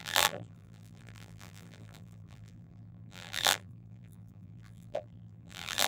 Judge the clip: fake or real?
fake